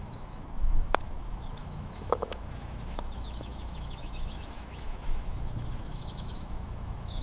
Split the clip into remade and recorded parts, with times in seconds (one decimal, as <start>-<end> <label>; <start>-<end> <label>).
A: 0.0-7.2 remade

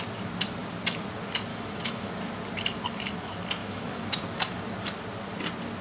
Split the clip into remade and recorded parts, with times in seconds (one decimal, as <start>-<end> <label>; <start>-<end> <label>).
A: 0.0-1.5 recorded; 1.5-2.1 remade; 2.1-3.6 recorded; 3.6-4.2 remade; 4.2-5.8 recorded

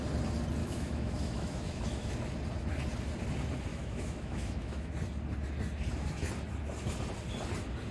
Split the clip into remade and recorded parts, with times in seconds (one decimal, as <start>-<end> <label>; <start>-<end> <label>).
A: 0.0-0.6 recorded; 0.6-2.1 remade; 2.1-3.7 recorded; 3.7-4.9 remade; 4.9-7.9 recorded

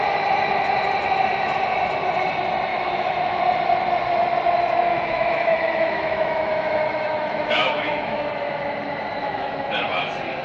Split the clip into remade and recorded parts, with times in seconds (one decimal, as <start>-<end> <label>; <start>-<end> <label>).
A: 0.0-2.7 recorded; 2.7-3.4 remade; 3.4-4.9 recorded; 4.9-8.3 remade; 8.3-9.2 recorded; 9.2-9.7 remade; 9.7-10.4 recorded

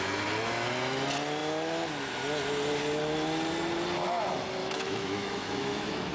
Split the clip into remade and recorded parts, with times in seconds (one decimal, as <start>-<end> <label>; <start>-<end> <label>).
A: 0.0-4.6 recorded; 4.6-6.1 remade

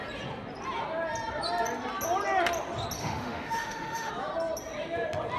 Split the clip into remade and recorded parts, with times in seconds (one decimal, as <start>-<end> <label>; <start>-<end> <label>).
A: 0.0-3.0 recorded; 3.0-4.1 remade; 4.1-5.4 recorded

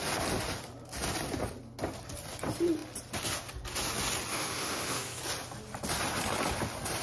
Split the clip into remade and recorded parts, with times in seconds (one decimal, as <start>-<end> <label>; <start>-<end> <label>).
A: 0.0-4.3 recorded; 4.3-5.2 remade; 5.2-7.0 recorded

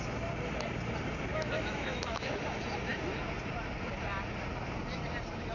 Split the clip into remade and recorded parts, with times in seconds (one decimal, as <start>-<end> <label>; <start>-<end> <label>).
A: 0.0-1.3 recorded; 1.3-2.4 remade; 2.4-5.5 recorded